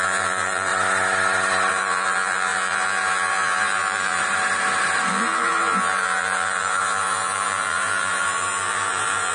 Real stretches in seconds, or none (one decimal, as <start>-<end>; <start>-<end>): 0.7-1.7; 4.2-5.1